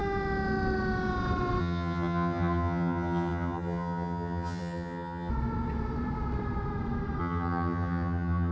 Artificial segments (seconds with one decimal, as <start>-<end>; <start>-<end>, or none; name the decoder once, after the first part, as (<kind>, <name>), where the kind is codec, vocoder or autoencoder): 1.6-5.3 (vocoder, HiFi-GAN); 7.2-8.5